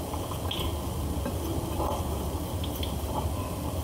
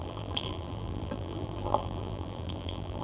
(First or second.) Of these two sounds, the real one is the first